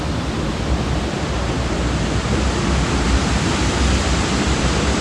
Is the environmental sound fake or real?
real